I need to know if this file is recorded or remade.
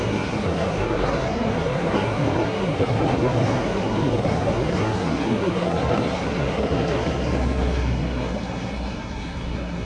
remade